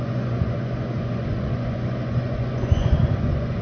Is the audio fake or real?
fake